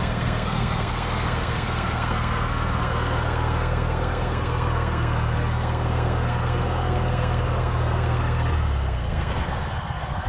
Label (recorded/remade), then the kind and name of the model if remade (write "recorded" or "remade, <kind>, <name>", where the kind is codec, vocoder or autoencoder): remade, codec, SNAC